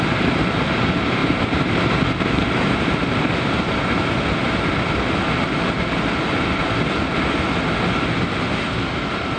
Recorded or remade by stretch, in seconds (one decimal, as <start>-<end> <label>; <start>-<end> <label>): 0.0-1.2 recorded; 1.2-3.7 remade; 3.7-9.4 recorded